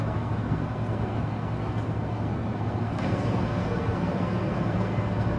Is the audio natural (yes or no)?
no